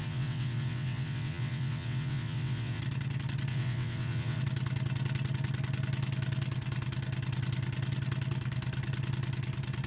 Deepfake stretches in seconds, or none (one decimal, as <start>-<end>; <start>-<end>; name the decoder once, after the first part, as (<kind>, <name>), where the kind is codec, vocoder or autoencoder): 0.0-2.8 (vocoder, WaveNeXt); 3.5-4.4